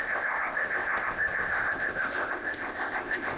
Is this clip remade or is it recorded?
remade